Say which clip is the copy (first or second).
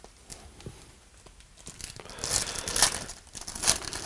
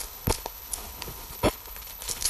second